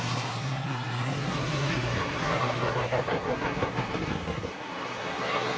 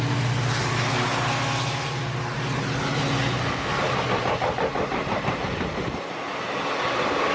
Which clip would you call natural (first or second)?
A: second